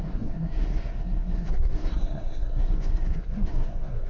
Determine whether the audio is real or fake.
fake